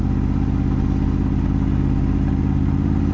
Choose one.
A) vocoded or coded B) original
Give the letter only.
B